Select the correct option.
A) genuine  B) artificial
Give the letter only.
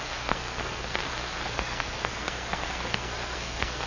B